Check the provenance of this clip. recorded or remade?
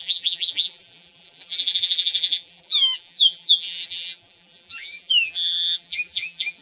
remade